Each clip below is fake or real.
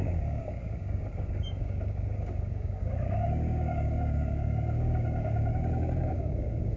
fake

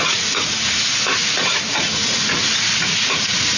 fake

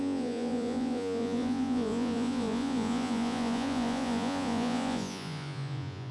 fake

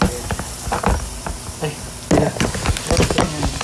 real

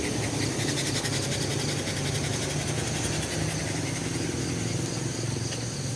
real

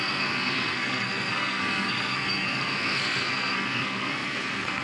fake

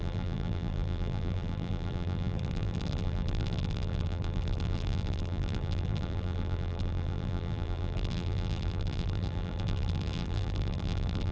fake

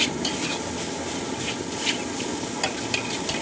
real